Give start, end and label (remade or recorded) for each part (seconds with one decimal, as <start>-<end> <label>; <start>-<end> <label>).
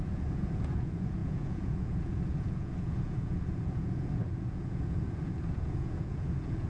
0.0-6.7 remade